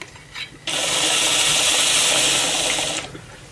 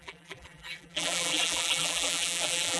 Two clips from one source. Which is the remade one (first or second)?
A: second